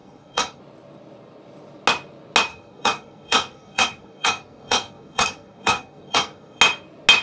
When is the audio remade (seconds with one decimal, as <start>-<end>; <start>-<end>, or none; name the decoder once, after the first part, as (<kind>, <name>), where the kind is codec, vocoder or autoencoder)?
0.0-0.6 (codec, SNAC); 2.5-6.6